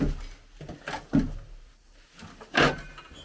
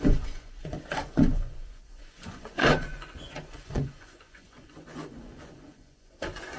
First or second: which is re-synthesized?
second